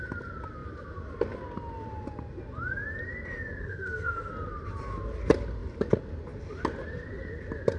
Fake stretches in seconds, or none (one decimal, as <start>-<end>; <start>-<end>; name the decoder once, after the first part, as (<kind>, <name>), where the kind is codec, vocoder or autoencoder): 3.6-4.3 (codec, SNAC)

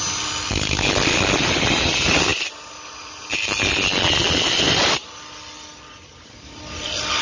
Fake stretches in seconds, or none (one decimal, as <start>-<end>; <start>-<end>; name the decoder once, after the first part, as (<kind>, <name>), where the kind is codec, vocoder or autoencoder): none